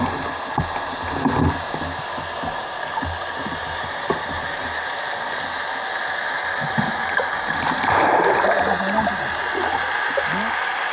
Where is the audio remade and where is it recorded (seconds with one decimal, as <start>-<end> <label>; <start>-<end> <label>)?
0.0-3.6 recorded; 3.6-5.3 remade; 5.3-10.9 recorded